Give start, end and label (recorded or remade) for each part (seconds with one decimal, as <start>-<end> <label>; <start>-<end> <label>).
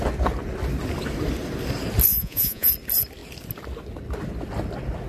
0.0-2.1 recorded; 2.1-2.7 remade; 2.7-5.1 recorded